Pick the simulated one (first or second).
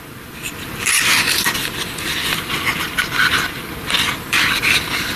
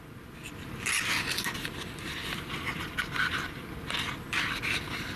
first